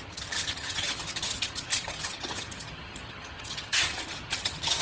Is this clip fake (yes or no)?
yes